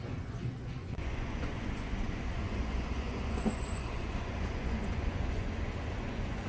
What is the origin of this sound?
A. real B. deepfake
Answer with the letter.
B